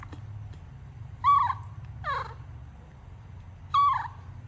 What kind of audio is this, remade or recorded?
recorded